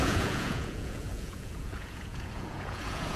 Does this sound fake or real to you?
fake